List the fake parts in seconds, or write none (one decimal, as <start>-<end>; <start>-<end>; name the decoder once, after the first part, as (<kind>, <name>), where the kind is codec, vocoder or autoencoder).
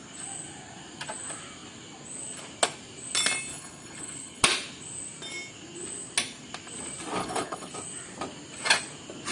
3.5-4.4 (codec, HILCodec); 7.2-7.7